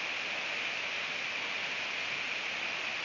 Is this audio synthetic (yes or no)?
no